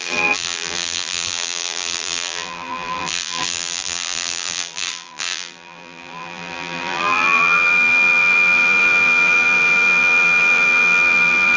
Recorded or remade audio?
remade